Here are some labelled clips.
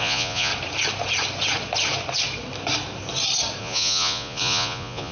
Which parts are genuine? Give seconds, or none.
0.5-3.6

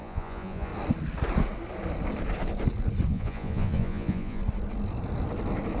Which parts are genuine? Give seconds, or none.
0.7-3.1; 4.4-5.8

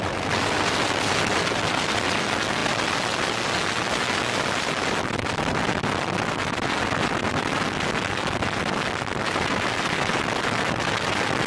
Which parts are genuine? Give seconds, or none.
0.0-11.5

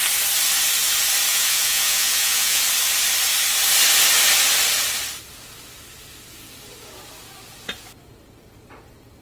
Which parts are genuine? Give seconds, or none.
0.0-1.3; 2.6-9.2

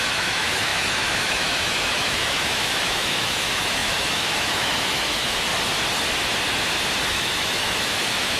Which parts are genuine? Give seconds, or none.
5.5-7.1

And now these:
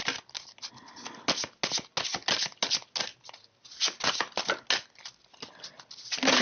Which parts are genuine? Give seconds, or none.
0.0-6.4